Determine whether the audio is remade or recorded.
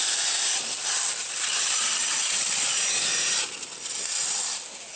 recorded